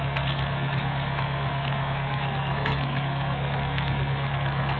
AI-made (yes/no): yes